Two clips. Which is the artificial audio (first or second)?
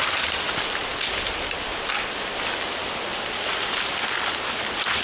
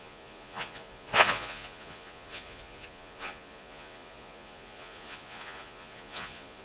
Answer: second